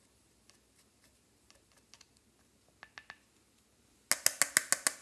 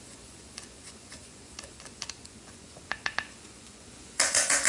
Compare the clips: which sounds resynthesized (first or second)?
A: second